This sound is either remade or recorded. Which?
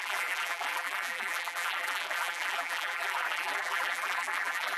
remade